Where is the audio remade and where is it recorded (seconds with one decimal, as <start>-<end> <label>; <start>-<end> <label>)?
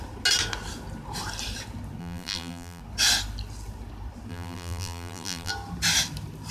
0.0-2.0 recorded; 2.0-2.8 remade; 2.8-4.3 recorded; 4.3-5.5 remade; 5.5-6.5 recorded